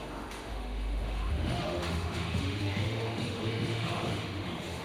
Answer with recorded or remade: remade